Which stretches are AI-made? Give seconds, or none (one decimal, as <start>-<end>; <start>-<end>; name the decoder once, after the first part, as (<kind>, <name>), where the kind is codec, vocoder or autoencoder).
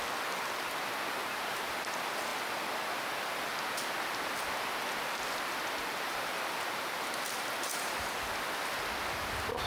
1.2-1.7 (vocoder, BigVGAN v2)